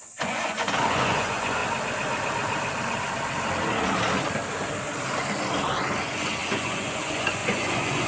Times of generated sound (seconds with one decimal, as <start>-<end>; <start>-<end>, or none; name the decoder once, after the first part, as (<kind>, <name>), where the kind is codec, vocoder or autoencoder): 0.0-1.6 (vocoder, Vocos); 6.0-8.1